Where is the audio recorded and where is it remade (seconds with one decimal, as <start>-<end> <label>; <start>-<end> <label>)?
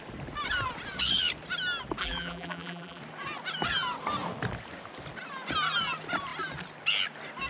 0.0-2.0 recorded; 2.0-3.0 remade; 3.0-7.5 recorded